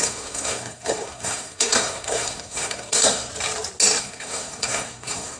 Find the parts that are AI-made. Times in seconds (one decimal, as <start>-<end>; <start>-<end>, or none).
0.0-3.3; 4.0-5.4

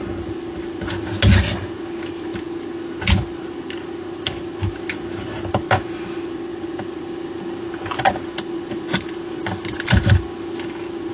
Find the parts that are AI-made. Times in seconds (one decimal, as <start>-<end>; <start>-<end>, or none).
none

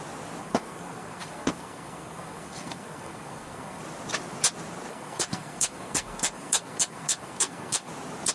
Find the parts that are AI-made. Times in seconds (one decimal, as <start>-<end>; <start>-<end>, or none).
0.4-3.8; 4.9-7.9